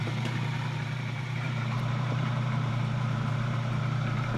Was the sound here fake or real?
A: fake